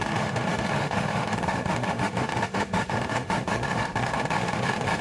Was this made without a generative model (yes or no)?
no